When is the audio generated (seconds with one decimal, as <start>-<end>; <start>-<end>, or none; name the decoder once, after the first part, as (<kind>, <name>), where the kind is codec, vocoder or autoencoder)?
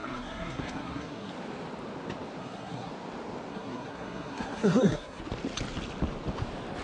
0.0-1.3 (codec, SNAC); 2.4-2.9; 3.5-5.2